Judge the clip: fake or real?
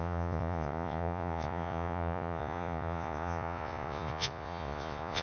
fake